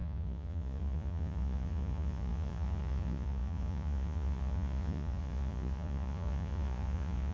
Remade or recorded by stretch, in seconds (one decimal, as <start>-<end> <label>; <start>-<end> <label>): 0.0-7.3 remade